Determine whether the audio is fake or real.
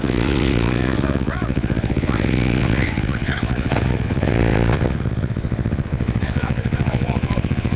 fake